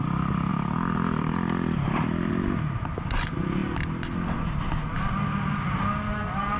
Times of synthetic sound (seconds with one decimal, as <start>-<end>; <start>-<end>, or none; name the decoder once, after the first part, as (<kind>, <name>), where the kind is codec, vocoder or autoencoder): 0.5-2.3 (vocoder, BigVGAN v2)